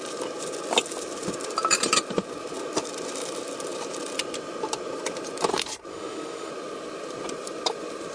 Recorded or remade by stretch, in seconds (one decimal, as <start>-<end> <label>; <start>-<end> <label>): 0.0-5.9 recorded; 5.9-6.5 remade; 6.5-8.1 recorded